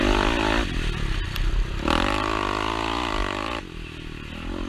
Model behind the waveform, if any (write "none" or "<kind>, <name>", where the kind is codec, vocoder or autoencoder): none